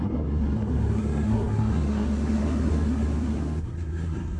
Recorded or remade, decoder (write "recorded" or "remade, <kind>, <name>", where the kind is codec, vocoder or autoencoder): remade, codec, SNAC